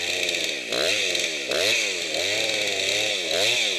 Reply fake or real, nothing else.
real